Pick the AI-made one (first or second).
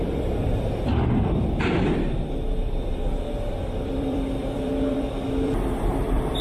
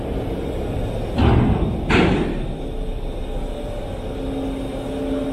first